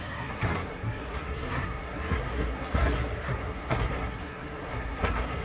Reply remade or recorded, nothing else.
remade